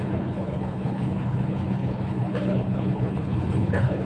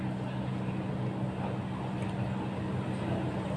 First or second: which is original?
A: second